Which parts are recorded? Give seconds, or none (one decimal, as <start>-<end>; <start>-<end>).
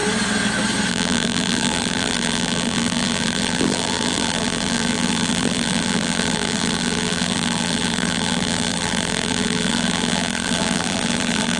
0.0-0.9